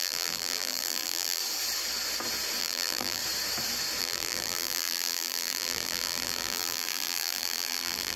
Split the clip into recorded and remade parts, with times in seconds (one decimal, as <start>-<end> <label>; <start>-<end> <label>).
0.0-1.4 remade; 1.4-2.6 recorded; 2.6-3.2 remade; 3.2-4.0 recorded; 4.0-8.2 remade